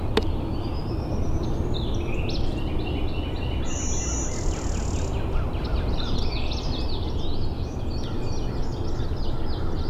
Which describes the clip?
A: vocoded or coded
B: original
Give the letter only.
B